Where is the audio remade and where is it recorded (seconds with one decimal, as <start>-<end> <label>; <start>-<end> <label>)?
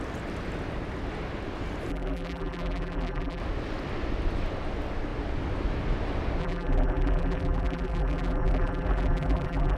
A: 0.0-1.9 recorded; 1.9-3.4 remade; 3.4-6.4 recorded; 6.4-9.8 remade